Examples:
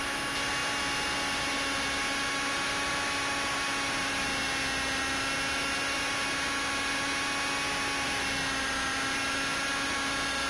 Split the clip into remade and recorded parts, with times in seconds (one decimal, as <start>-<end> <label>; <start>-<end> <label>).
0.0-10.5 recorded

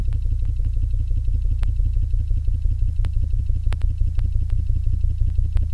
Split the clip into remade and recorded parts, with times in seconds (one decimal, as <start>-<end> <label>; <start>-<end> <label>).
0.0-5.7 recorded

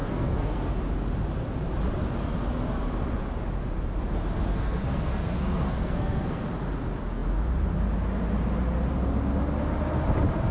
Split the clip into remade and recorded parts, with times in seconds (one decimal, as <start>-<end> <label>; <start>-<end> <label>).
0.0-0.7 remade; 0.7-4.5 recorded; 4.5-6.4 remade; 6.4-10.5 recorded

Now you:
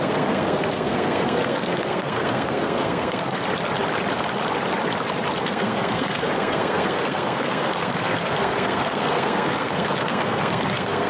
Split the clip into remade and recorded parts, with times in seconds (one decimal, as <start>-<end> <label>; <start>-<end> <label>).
0.0-3.4 remade; 3.4-5.4 recorded; 5.4-11.1 remade

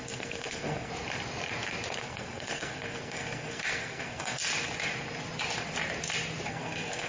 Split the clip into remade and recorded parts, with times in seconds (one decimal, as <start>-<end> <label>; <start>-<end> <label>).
0.0-0.9 remade; 0.9-2.0 recorded; 2.0-4.4 remade; 4.4-6.5 recorded; 6.5-7.1 remade

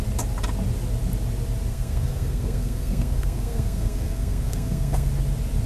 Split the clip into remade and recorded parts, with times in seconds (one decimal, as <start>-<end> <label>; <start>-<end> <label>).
0.0-1.7 recorded; 1.7-5.1 remade; 5.1-5.7 recorded

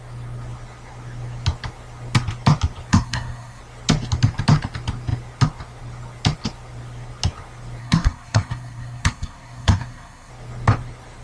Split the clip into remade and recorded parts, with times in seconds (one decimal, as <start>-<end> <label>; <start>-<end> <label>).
0.0-2.9 recorded; 2.9-3.6 remade; 3.6-7.8 recorded; 7.8-10.3 remade; 10.3-11.2 recorded